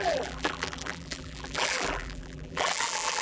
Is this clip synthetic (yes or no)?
yes